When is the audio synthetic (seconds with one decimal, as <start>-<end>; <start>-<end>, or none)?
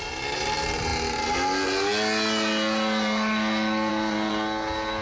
none